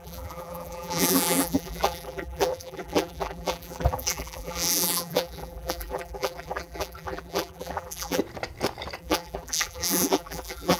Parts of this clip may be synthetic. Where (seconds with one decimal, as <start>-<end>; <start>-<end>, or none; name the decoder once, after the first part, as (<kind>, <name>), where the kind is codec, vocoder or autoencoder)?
0.0-8.2 (vocoder, BigVGAN v2); 9.0-10.8